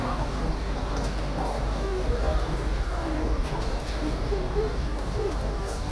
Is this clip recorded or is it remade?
remade